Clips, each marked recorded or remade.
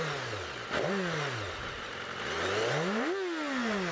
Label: recorded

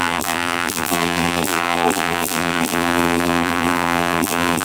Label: remade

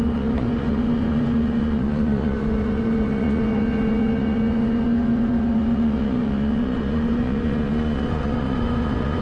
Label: remade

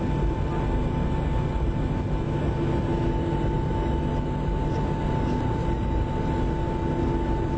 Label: recorded